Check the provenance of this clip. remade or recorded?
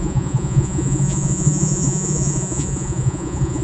remade